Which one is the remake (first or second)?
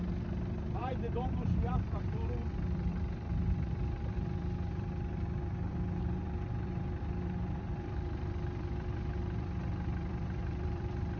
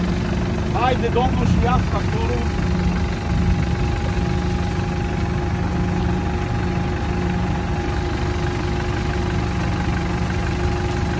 first